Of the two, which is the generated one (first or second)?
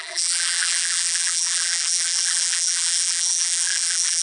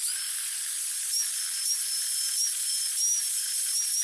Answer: first